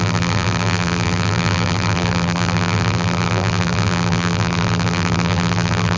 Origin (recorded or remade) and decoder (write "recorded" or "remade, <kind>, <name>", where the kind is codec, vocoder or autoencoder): remade, vocoder, BigVGAN v2